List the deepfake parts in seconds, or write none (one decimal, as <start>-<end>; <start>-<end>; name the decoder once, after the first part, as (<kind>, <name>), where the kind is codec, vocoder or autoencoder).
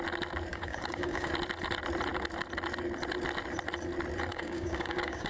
0.5-1.3 (codec, DAC); 4.3-5.3